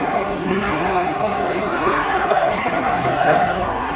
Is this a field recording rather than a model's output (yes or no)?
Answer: no